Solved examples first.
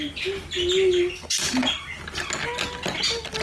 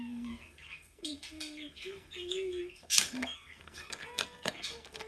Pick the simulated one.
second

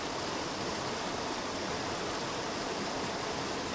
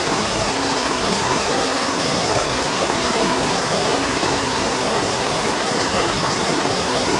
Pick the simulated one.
second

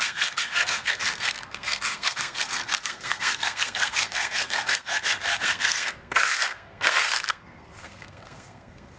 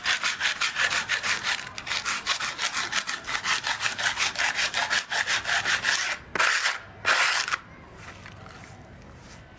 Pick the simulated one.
first